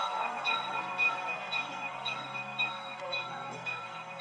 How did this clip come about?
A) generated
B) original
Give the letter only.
A